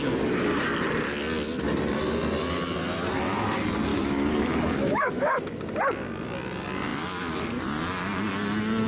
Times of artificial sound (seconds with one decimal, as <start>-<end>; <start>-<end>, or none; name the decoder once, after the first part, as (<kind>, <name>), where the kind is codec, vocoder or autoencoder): 3.9-5.6 (autoencoder, DAC-VAE)